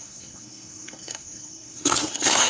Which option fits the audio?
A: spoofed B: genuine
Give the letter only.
A